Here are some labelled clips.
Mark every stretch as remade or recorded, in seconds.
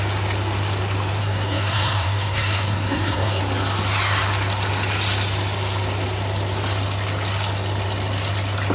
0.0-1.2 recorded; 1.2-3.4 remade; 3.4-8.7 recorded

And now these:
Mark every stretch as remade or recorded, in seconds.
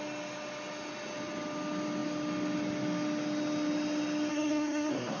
0.0-4.3 recorded; 4.3-5.2 remade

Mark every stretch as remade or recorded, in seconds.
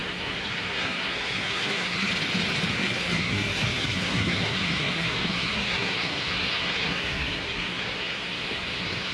0.0-2.1 remade; 2.1-2.7 recorded; 2.7-9.1 remade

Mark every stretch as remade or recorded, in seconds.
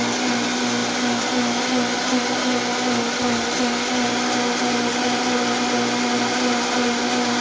0.0-7.4 recorded